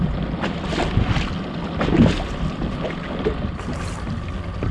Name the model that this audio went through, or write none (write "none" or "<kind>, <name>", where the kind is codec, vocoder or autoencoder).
none